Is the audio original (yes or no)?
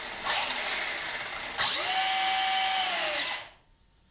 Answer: yes